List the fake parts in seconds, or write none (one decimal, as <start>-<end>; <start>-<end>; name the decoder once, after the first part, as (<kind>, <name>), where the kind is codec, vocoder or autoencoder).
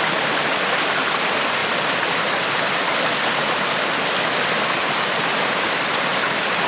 none